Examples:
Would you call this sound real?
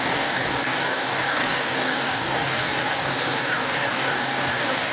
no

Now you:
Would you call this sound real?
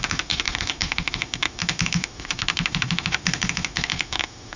no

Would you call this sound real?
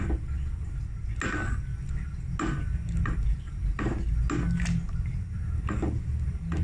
yes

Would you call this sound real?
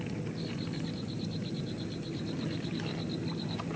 yes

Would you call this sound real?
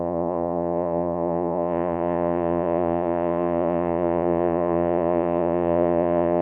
no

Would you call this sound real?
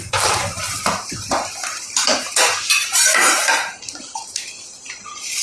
no